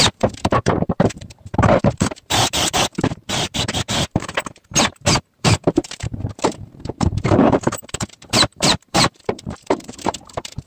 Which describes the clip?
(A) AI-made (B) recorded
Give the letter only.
A